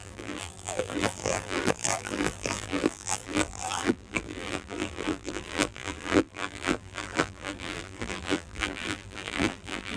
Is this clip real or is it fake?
fake